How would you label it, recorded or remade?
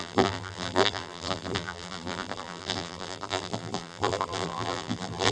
remade